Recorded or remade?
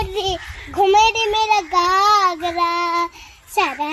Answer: recorded